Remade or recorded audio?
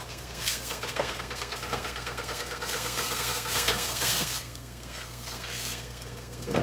remade